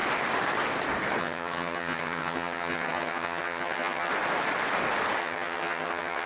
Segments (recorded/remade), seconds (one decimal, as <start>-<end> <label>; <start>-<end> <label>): 0.0-1.2 recorded; 1.2-4.1 remade; 4.1-5.2 recorded; 5.2-6.3 remade